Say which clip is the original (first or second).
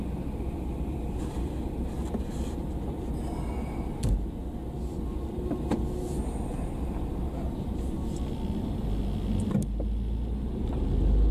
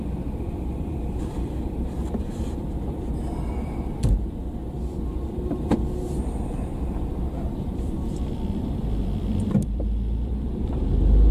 first